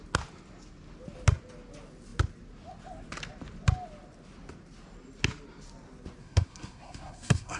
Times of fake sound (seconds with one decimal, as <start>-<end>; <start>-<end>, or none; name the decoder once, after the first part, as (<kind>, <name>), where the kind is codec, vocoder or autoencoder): 6.2-7.6 (codec, SNAC)